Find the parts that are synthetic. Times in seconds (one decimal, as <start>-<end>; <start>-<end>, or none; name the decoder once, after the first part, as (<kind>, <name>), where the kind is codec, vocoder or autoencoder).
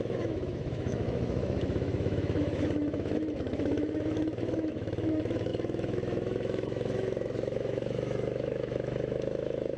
0.0-9.8 (autoencoder, DAC-VAE)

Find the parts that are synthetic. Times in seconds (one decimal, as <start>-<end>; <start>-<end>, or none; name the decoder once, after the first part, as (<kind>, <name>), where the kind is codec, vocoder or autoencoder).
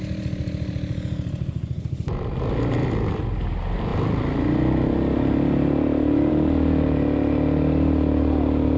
none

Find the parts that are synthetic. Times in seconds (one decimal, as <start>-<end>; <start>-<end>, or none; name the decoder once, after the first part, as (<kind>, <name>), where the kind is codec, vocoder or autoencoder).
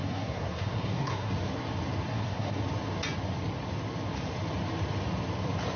0.0-1.3 (codec, SNAC); 2.1-2.6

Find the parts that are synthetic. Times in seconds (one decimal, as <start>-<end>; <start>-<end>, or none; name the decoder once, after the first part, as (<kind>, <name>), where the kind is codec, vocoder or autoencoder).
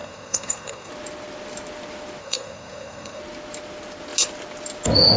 0.0-0.9 (codec, SNAC); 2.2-3.2